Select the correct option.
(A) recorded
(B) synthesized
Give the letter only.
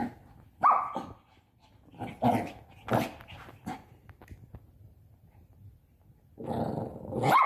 A